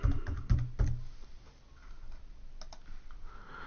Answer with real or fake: real